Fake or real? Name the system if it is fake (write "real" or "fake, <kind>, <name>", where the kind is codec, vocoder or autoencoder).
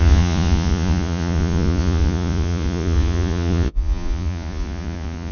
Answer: fake, vocoder, Vocos